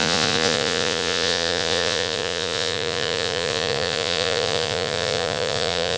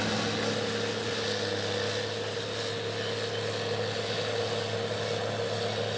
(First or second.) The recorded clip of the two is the second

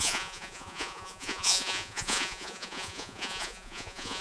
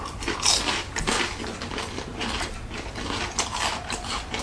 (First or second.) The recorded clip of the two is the second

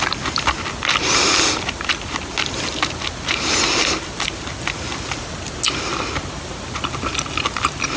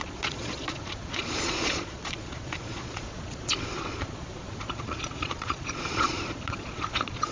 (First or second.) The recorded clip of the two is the first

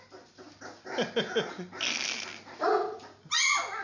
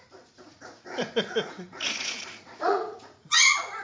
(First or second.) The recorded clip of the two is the first